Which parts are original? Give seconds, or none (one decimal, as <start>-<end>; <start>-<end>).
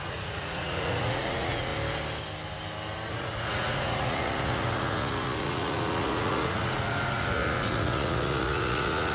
1.7-3.1